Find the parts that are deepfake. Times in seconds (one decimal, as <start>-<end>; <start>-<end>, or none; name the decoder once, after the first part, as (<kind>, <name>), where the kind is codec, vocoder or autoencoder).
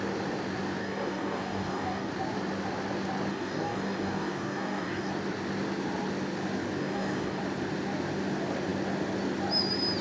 0.8-2.1 (codec, DAC); 3.3-5.1; 6.8-7.4